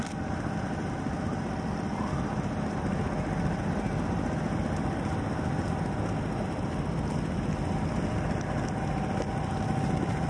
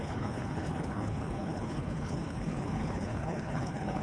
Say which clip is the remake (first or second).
second